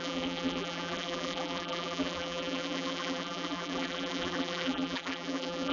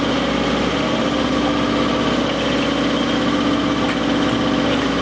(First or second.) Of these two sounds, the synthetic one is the first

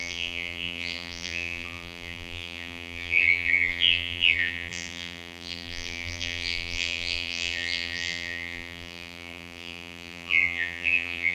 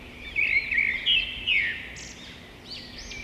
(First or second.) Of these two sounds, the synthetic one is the first